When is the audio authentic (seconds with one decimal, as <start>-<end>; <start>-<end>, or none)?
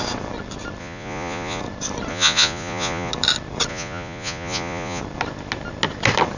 0.0-0.8; 1.6-2.1; 3.1-3.7; 5.0-6.4